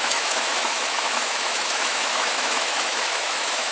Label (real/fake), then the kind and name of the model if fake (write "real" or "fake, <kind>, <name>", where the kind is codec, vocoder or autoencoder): fake, autoencoder, DAC-VAE